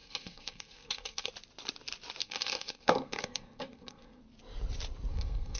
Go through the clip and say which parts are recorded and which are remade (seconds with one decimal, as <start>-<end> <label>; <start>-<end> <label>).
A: 0.0-1.3 remade; 1.3-2.2 recorded; 2.2-4.2 remade; 4.2-5.1 recorded; 5.1-5.6 remade